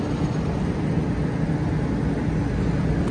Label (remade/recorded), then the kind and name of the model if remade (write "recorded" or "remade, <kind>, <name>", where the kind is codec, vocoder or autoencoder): recorded